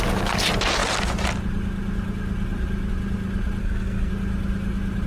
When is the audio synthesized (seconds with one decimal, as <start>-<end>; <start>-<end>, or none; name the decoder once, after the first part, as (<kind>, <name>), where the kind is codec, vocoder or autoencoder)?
3.6-4.1 (codec, SNAC)